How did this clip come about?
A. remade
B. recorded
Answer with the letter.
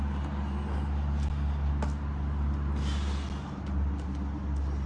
B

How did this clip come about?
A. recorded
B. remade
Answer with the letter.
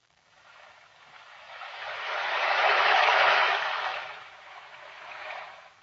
B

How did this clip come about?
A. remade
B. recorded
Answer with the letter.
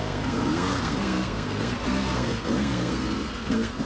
A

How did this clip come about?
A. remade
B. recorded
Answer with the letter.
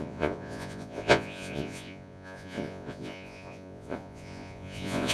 A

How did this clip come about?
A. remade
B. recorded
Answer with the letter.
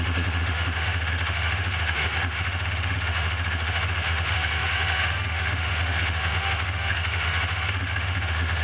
A